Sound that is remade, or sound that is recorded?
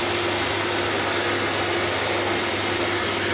recorded